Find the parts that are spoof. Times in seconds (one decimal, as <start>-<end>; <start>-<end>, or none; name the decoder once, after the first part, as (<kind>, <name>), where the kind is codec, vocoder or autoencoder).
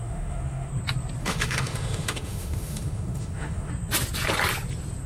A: 0.0-0.7 (autoencoder, DAC-VAE); 1.2-3.7